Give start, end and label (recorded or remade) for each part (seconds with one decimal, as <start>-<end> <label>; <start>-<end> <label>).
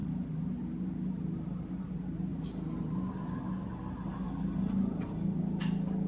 0.0-6.1 recorded